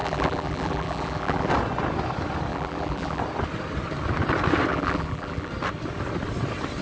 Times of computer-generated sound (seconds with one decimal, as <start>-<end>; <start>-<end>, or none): 0.0-1.5; 2.5-3.2; 4.7-5.5